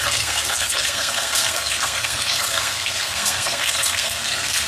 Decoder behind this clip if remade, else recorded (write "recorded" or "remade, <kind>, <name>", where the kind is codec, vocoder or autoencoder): remade, codec, SNAC